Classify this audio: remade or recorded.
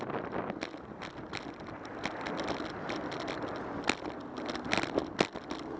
recorded